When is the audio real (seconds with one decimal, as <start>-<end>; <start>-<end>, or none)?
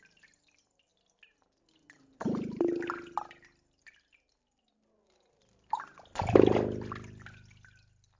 0.0-8.2